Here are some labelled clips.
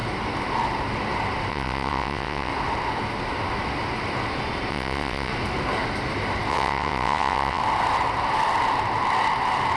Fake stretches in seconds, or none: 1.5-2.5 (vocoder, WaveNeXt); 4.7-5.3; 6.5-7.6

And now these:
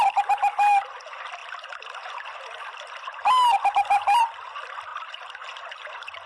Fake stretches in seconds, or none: none

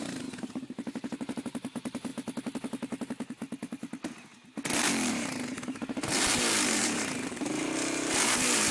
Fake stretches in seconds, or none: 0.0-2.1 (vocoder, BigVGAN v2); 5.1-8.7

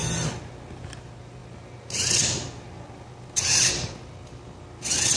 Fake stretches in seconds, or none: none

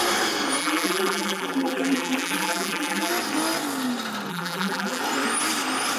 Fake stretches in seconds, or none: 0.6-3.1 (vocoder, BigVGAN v2); 4.3-5.0

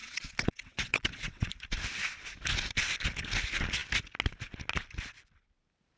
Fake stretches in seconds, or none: 0.0-1.5 (vocoder, WaveNeXt)

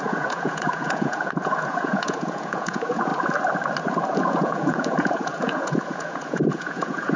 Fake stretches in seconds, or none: 0.0-3.1 (vocoder, Vocos); 4.2-7.2